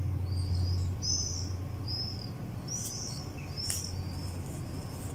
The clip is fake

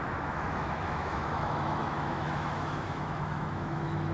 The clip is fake